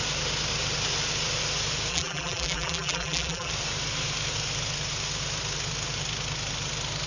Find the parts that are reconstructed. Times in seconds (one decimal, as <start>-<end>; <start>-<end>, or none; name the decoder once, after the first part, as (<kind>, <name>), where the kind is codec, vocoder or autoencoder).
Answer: 1.9-3.5 (vocoder, BigVGAN v2)